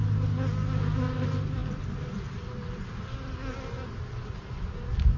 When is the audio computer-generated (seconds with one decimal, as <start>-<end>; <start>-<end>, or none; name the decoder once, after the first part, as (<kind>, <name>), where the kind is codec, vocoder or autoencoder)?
none